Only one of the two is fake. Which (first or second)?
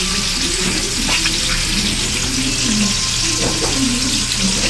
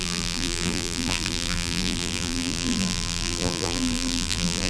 second